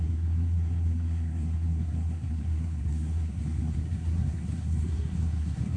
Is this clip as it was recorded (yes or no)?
no